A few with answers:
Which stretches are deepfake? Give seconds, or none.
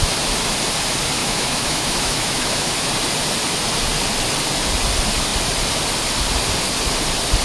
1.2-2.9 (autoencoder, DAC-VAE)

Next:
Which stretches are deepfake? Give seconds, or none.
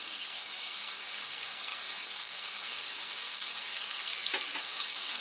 0.0-4.1 (codec, SNAC); 4.6-5.2